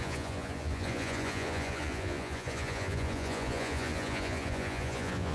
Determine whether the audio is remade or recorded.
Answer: remade